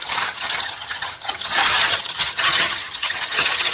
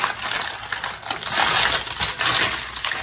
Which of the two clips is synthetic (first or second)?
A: first